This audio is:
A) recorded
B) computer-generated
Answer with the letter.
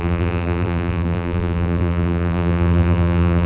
B